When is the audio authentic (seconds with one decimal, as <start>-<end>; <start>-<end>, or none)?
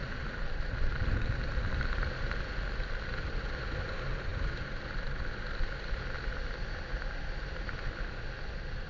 0.0-8.9